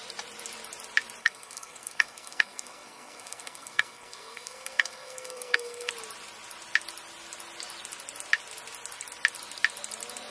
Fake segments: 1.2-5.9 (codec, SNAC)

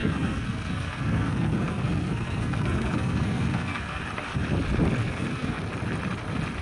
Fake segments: 0.0-4.0 (codec, SNAC); 5.0-5.6

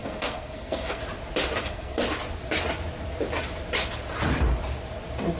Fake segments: 0.0-1.0 (codec, SNAC); 1.6-2.0

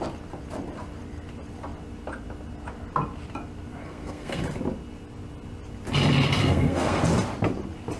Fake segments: 3.8-4.4 (codec, SNAC); 6.4-7.0

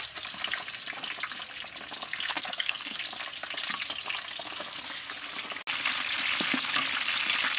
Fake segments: 2.3-3.0 (codec, SNAC)

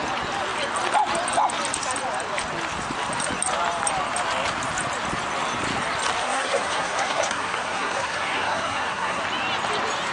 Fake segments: 6.2-9.2 (codec, SNAC)

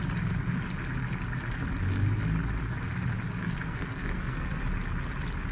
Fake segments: 3.4-4.6 (codec, SNAC)

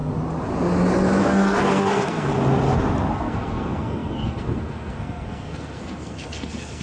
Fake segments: 1.2-2.3 (codec, SNAC); 3.1-6.8